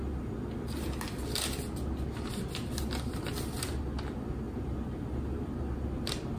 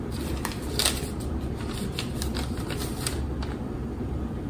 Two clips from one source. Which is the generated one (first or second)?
second